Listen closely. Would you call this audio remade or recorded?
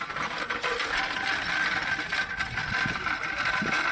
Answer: recorded